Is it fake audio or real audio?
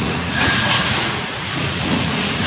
fake